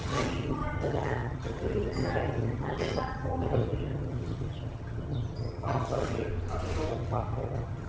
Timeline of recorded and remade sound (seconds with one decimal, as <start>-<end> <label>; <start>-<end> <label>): 0.0-6.3 remade; 6.3-6.9 recorded; 6.9-7.9 remade